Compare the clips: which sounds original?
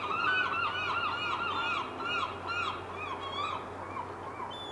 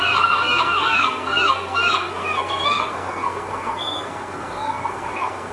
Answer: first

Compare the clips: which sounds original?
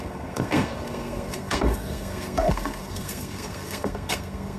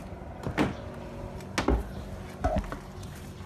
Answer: second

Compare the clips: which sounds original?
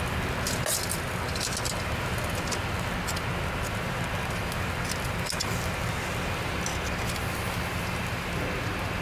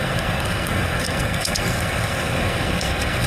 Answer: first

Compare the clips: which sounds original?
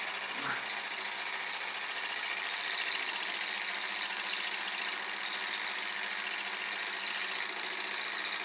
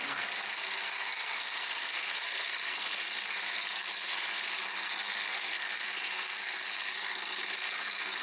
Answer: first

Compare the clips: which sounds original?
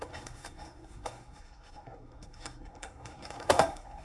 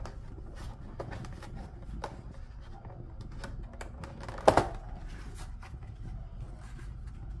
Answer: second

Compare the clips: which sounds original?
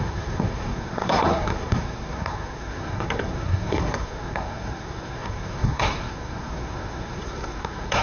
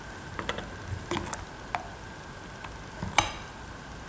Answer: second